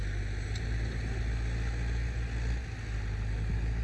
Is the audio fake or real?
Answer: real